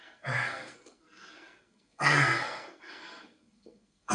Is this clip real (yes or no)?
no